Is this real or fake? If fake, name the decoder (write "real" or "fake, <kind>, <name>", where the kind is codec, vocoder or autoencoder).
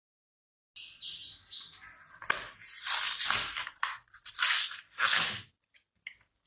real